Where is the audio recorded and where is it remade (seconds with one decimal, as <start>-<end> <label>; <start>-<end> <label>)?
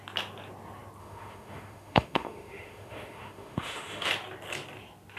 0.0-1.0 recorded; 1.0-4.1 remade; 4.1-5.2 recorded